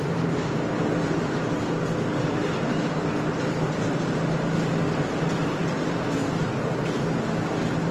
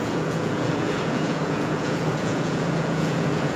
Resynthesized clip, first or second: second